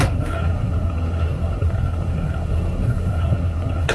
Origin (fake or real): fake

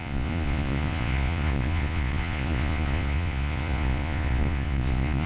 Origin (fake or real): fake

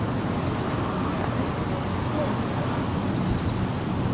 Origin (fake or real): real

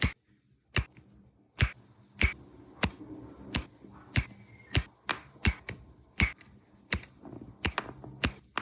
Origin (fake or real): real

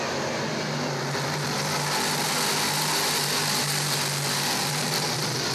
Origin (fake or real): real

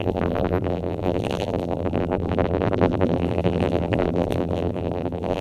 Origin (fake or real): fake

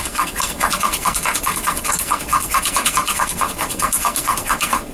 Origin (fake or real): fake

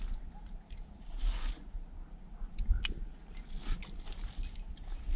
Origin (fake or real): real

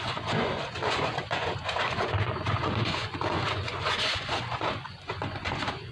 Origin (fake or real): fake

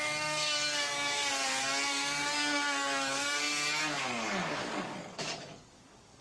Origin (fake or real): fake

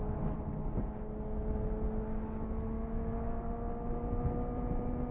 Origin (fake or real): real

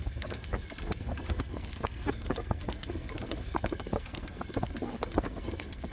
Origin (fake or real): fake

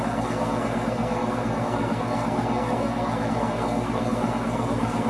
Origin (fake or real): fake